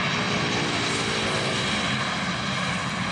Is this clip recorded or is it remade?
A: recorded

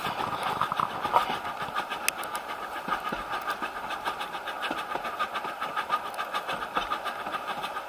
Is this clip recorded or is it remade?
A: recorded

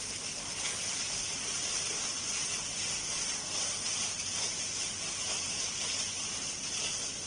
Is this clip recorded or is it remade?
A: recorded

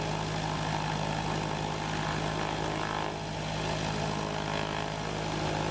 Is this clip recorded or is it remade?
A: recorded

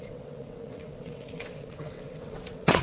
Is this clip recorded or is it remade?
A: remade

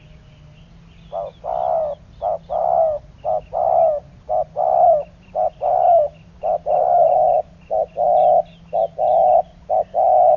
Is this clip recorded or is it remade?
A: recorded